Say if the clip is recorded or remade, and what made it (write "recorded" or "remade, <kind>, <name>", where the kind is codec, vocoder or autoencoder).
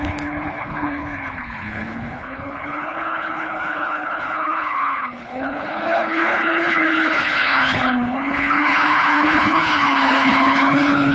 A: remade, codec, HILCodec